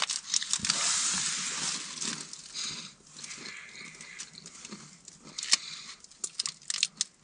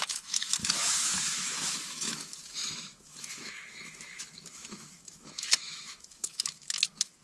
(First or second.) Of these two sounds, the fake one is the second